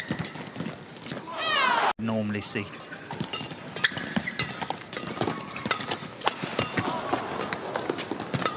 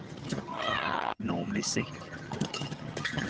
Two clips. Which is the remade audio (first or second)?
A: second